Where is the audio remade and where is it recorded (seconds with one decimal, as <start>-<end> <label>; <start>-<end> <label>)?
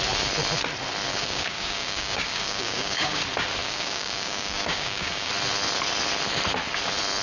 0.0-1.1 recorded; 1.1-3.2 remade; 3.2-3.6 recorded; 3.6-5.3 remade; 5.3-7.2 recorded